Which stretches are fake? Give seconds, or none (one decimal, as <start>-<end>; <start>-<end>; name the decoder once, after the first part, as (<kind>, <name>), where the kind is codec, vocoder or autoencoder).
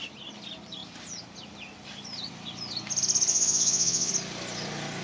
3.3-4.1 (vocoder, Vocos)